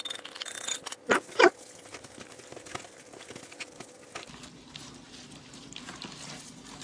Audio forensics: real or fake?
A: real